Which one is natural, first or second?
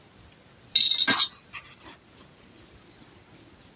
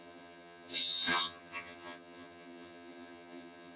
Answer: first